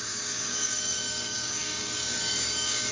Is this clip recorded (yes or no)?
no